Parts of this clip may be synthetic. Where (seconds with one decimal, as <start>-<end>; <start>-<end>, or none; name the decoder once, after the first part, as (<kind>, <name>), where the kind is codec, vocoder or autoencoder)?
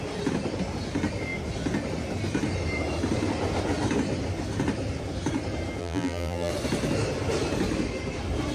5.8-6.5 (vocoder, BigVGAN v2)